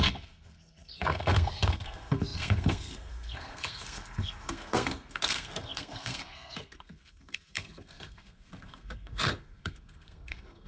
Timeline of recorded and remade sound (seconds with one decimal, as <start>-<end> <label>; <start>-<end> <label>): 0.0-10.7 remade